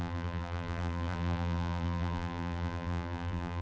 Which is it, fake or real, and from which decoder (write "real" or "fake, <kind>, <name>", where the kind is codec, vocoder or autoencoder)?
fake, vocoder, BigVGAN v2